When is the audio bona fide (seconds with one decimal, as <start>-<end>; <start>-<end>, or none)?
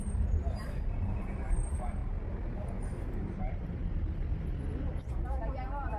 2.0-3.1; 3.8-4.8